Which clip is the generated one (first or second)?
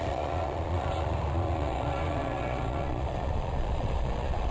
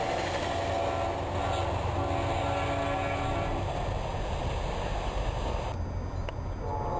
first